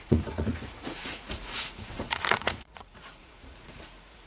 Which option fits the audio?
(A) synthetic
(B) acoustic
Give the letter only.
A